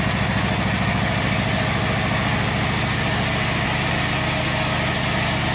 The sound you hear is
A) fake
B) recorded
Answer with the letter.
B